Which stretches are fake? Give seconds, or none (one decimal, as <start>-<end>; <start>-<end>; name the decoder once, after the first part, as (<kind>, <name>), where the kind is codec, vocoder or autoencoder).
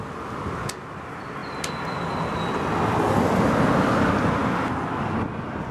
none